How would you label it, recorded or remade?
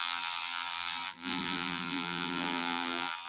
remade